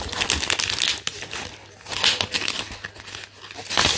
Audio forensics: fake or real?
real